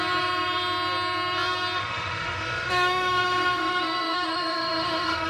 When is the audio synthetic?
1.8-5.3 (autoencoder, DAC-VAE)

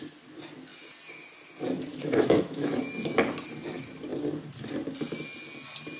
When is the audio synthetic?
1.9-2.7 (autoencoder, DAC-VAE)

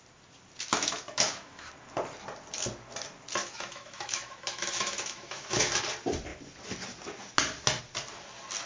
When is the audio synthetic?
0.7-1.7 (autoencoder, DAC-VAE); 3.4-5.8